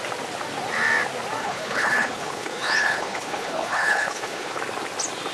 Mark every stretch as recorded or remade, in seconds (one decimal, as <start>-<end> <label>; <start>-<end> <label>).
0.0-1.4 recorded; 1.4-4.6 remade; 4.6-5.3 recorded